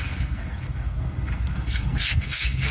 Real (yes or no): no